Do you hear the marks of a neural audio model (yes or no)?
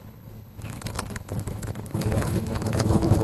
yes